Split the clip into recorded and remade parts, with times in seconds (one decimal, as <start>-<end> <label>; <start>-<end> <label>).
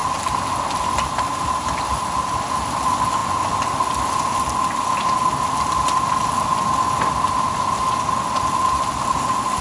0.0-9.6 recorded